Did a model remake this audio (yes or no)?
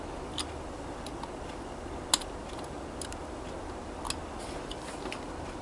no